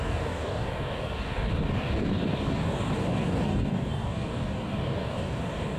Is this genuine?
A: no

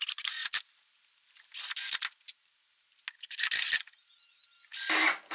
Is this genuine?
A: yes